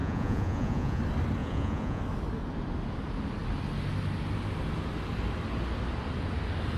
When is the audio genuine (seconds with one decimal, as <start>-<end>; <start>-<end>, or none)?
1.0-1.4; 2.0-6.8